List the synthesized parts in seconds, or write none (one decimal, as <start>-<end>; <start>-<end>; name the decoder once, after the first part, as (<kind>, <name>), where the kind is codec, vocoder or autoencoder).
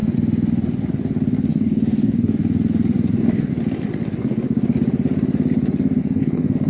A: 1.5-2.4 (codec, DAC); 3.1-3.5; 6.0-6.7